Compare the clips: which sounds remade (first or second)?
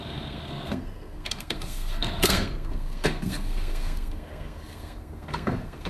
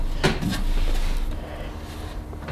first